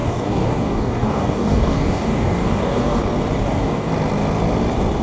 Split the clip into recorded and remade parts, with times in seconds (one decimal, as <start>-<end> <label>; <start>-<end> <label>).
0.0-3.0 remade; 3.0-3.4 recorded; 3.4-3.9 remade; 3.9-5.0 recorded